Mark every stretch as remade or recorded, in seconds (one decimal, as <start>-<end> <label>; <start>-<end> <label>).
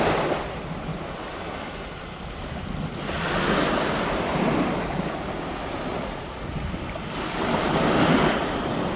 0.0-5.9 recorded; 5.9-6.4 remade; 6.4-9.0 recorded